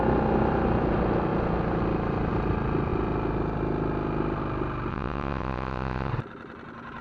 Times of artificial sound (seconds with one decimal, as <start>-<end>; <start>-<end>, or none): 4.9-6.1